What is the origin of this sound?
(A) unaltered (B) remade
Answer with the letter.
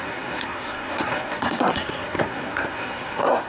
B